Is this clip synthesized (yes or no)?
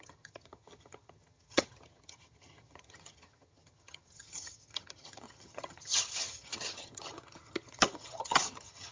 yes